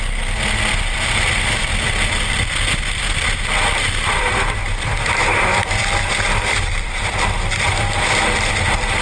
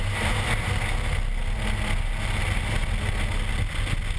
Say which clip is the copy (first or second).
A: first